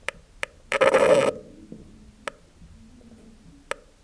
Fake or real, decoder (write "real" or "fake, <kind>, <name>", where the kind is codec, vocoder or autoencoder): real